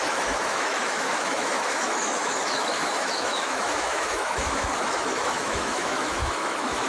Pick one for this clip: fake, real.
fake